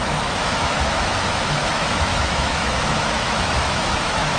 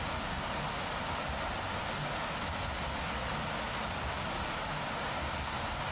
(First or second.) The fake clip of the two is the first